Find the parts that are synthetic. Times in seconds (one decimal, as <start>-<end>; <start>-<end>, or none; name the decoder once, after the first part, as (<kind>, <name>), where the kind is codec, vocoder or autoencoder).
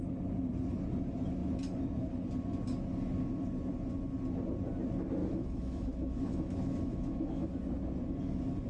5.2-7.6 (autoencoder, DAC-VAE)